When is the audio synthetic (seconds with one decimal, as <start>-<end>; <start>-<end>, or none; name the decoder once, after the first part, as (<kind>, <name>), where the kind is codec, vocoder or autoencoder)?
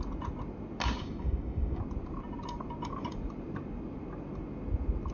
1.0-1.8 (codec, DAC)